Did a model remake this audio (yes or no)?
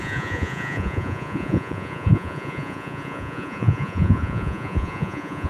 yes